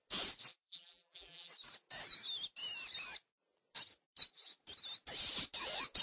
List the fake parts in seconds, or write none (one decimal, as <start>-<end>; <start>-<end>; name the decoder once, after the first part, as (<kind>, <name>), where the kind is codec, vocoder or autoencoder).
0.5-1.5 (vocoder, BigVGAN v2)